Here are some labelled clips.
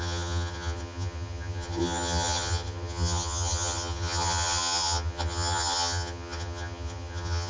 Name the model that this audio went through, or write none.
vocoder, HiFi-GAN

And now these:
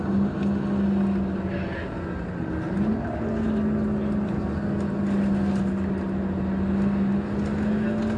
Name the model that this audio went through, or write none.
none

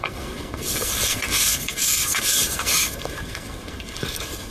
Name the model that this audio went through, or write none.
codec, SNAC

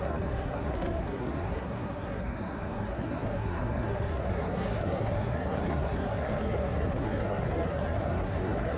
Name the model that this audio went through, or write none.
codec, SNAC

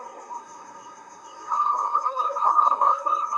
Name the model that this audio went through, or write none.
codec, SNAC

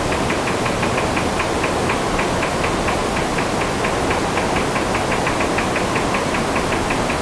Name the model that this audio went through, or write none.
none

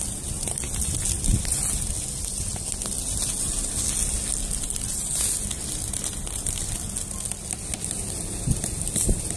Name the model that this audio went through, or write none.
none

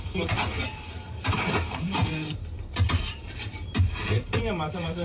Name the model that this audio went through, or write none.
vocoder, BigVGAN v2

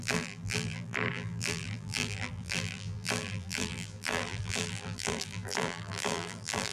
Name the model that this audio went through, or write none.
vocoder, BigVGAN v2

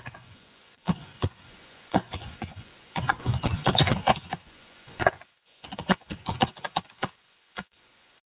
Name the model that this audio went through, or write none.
vocoder, Vocos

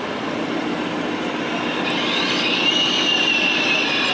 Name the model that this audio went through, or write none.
none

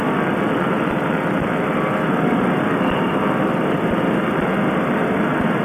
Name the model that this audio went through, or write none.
none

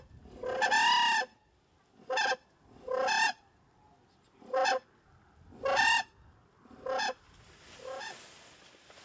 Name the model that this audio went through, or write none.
none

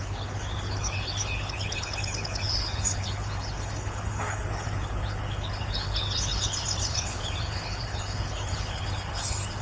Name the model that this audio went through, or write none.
codec, HILCodec